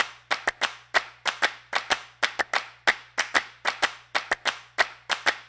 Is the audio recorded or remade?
recorded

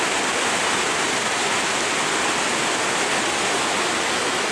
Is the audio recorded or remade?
recorded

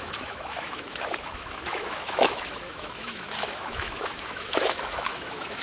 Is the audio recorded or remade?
remade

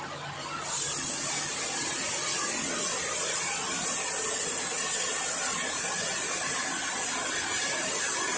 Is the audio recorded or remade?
recorded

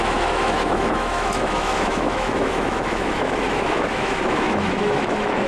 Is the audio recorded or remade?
remade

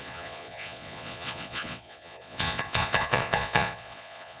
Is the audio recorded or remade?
remade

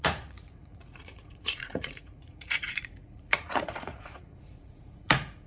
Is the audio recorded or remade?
remade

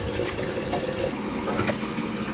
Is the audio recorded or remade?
recorded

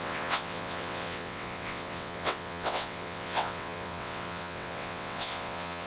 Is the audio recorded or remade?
remade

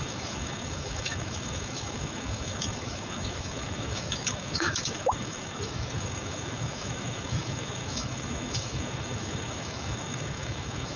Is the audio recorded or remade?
remade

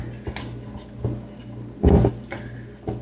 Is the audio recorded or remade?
recorded